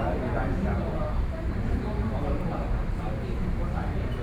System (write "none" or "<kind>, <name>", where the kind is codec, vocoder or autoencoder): vocoder, BigVGAN v2